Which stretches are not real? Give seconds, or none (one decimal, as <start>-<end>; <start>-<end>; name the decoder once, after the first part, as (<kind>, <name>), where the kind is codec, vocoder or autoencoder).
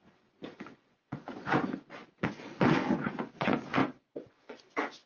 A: 0.0-5.1 (vocoder, Vocos)